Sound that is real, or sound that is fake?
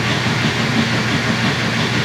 real